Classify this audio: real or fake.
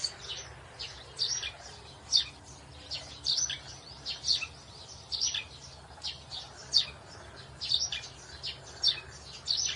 real